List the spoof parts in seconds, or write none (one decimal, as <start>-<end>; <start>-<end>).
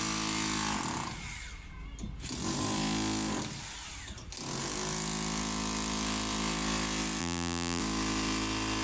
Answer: 7.2-7.8